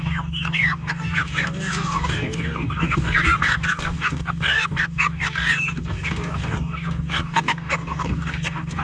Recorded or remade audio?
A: remade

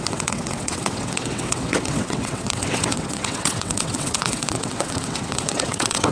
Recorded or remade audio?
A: remade